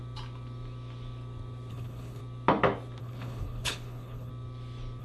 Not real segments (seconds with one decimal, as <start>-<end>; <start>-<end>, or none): 1.7-2.2; 3.0-4.3